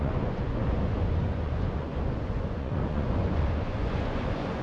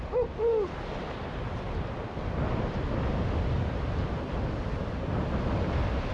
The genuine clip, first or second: second